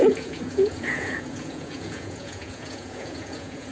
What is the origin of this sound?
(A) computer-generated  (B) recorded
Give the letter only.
A